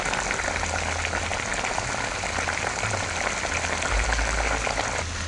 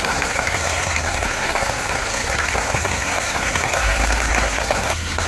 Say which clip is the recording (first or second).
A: first